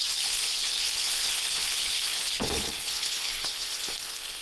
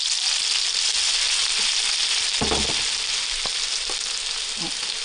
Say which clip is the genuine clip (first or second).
second